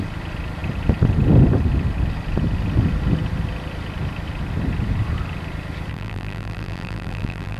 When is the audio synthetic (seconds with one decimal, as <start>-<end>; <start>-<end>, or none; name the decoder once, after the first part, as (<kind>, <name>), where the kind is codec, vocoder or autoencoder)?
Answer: 5.9-7.6 (vocoder, BigVGAN v2)